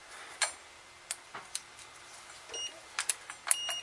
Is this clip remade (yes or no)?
no